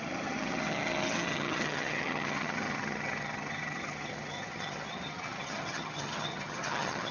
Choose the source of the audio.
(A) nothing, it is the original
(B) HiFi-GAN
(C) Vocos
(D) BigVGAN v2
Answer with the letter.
B